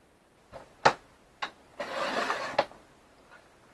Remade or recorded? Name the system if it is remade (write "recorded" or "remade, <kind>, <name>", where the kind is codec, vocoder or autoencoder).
recorded